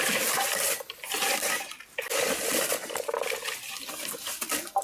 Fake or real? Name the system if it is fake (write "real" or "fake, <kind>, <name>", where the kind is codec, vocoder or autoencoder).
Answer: real